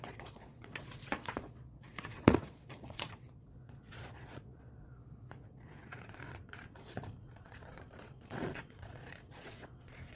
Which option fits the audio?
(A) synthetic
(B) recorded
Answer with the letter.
A